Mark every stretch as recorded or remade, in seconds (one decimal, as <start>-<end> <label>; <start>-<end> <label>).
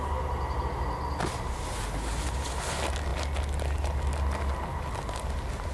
0.0-5.7 recorded